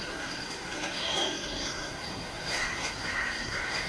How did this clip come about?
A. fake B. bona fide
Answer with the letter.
A